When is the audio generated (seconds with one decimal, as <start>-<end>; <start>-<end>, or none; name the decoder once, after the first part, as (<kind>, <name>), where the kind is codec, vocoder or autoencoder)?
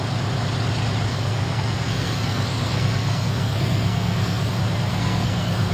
1.1-4.5 (codec, SNAC); 4.9-5.7